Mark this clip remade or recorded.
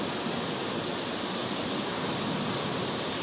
recorded